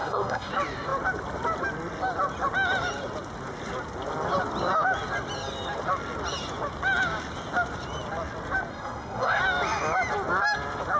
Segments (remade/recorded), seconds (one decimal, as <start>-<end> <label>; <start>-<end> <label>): 0.0-0.5 remade; 0.5-8.7 recorded; 8.7-9.4 remade; 9.4-11.0 recorded